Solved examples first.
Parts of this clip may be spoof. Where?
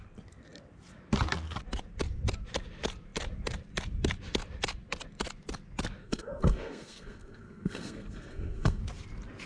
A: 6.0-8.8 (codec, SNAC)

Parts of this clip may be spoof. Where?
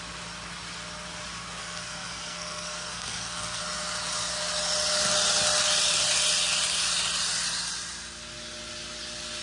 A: 1.6-3.6 (codec, SNAC)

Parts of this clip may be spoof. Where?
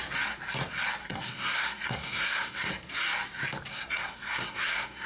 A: 1.0-2.7 (codec, SNAC); 3.7-5.1